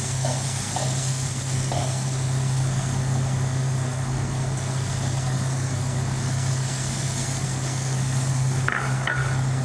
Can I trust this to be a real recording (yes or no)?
no